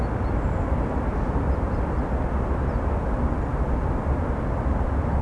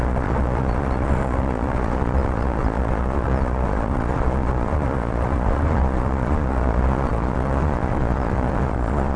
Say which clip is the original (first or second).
first